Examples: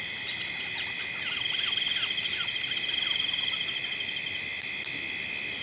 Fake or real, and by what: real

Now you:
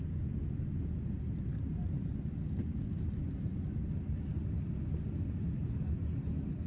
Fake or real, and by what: real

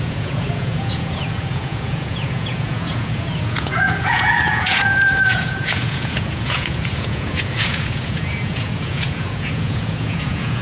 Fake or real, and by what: fake, vocoder, Vocos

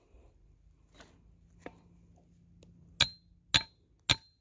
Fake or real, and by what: real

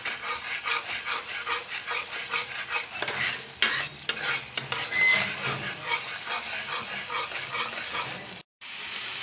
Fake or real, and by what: real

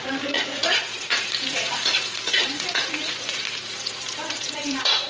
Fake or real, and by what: fake, vocoder, Vocos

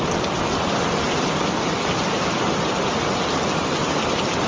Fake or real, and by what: real